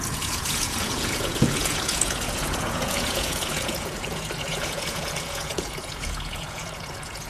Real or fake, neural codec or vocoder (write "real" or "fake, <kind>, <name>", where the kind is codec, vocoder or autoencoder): fake, vocoder, Vocos